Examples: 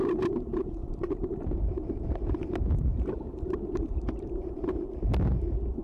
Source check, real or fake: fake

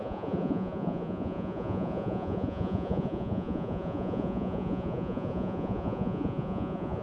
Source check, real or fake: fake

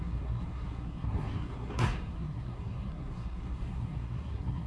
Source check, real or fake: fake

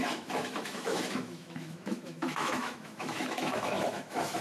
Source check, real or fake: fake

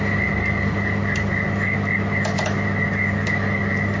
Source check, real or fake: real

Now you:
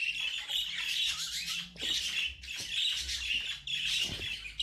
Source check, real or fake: real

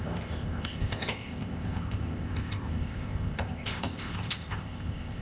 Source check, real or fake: fake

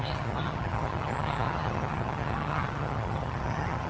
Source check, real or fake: fake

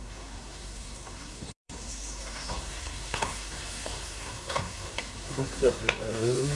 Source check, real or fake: fake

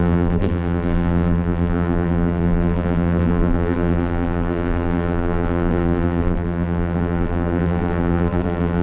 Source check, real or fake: fake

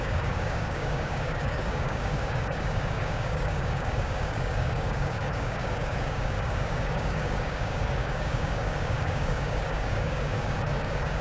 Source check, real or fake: fake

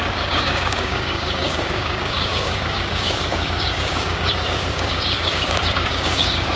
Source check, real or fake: fake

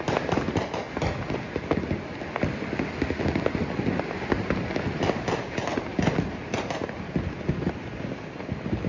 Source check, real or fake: real